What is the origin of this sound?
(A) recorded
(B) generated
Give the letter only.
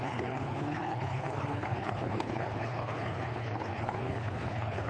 B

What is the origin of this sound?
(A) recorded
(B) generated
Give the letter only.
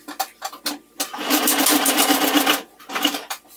A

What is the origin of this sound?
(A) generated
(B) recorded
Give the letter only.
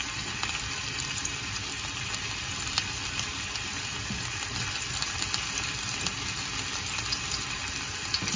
B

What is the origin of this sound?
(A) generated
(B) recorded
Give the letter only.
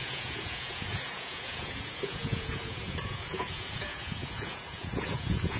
A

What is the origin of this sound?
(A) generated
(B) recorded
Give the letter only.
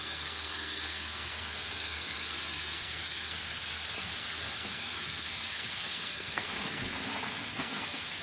A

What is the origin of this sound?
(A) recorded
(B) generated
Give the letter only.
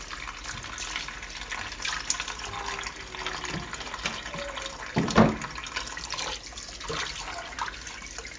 A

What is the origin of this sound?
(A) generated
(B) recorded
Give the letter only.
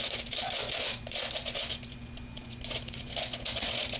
A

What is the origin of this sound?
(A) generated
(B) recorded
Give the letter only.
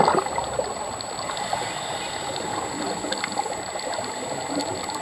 B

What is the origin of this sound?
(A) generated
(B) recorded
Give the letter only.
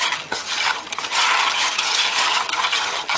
A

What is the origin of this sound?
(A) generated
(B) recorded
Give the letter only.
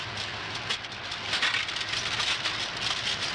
B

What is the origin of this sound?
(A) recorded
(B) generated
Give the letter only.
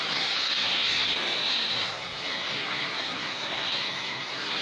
B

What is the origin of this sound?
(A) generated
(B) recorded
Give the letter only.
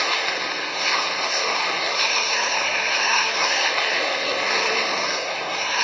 A